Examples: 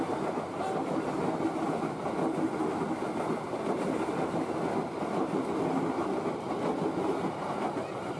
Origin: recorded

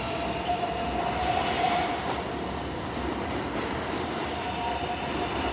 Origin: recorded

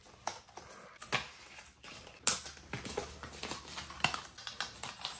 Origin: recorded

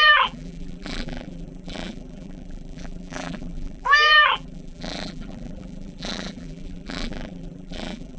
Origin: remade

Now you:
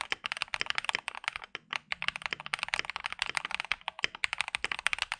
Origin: recorded